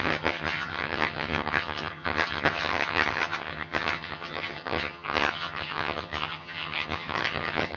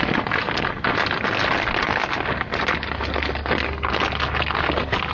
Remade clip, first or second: first